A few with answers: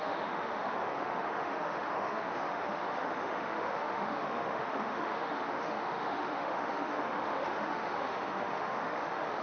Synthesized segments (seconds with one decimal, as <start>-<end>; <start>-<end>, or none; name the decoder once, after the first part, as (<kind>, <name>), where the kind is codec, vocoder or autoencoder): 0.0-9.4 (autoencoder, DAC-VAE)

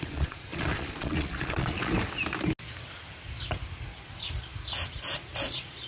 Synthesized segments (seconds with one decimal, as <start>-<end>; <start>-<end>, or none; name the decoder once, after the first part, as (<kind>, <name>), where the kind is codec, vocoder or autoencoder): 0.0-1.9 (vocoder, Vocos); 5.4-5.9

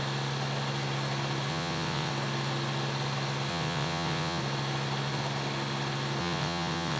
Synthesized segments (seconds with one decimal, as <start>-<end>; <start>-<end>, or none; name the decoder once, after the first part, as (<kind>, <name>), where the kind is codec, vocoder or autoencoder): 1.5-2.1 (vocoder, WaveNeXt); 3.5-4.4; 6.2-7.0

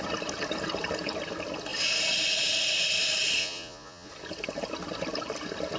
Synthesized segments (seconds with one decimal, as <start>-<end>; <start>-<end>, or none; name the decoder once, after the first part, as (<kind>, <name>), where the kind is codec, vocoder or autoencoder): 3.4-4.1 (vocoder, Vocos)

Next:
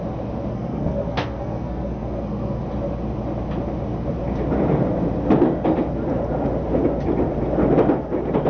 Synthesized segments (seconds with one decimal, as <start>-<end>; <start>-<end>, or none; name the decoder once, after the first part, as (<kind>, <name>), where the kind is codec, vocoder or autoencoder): 0.5-2.6 (codec, SNAC)